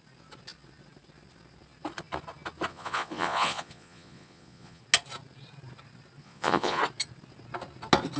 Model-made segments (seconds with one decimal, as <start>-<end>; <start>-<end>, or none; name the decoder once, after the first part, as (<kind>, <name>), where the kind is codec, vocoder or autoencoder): 2.7-4.8 (vocoder, Vocos); 6.2-6.8